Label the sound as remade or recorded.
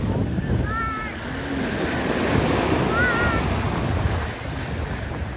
recorded